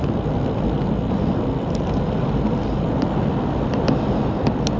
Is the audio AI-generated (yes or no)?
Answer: no